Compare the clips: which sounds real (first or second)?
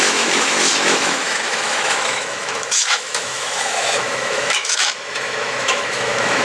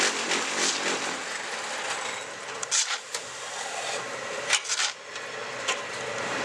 second